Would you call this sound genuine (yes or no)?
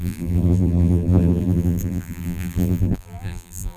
no